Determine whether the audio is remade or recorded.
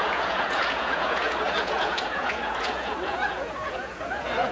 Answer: remade